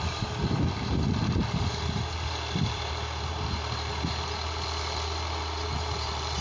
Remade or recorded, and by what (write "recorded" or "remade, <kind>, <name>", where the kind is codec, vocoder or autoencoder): recorded